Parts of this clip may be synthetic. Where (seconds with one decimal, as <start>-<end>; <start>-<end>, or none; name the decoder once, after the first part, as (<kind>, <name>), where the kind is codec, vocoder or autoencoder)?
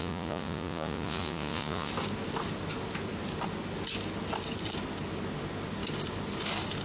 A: 0.0-1.9 (vocoder, Vocos)